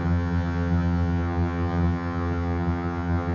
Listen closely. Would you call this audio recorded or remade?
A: remade